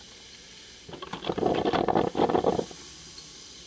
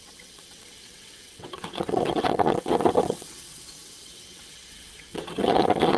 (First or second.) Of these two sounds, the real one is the first